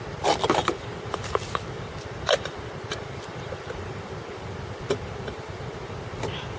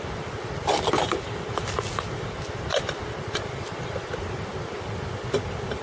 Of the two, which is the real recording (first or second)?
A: second